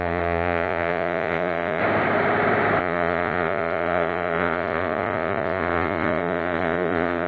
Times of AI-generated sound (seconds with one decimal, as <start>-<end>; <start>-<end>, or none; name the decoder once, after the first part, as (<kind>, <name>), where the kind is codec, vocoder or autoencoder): 0.0-1.8 (vocoder, Vocos); 2.8-7.3